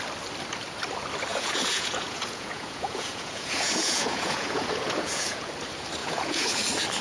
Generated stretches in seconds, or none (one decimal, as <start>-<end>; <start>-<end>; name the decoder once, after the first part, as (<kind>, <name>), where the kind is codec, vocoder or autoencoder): 1.3-5.5 (vocoder, Vocos); 6.0-6.6